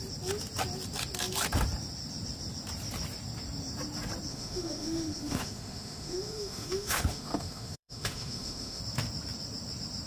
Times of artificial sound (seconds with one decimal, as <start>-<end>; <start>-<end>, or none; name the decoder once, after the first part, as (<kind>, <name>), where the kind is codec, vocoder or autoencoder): 4.3-8.8 (autoencoder, DAC-VAE)